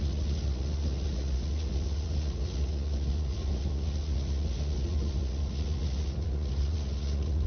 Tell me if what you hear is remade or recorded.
remade